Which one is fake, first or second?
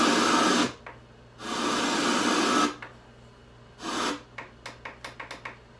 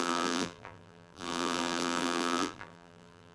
second